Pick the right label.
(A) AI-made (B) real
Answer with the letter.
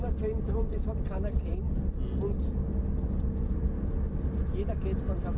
B